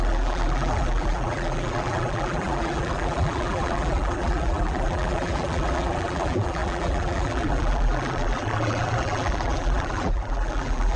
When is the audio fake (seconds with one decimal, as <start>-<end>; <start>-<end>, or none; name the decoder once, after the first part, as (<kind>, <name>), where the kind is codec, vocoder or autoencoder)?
0.0-11.0 (vocoder, BigVGAN v2)